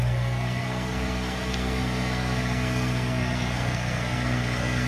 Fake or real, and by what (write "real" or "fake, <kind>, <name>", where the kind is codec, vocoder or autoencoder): fake, codec, SNAC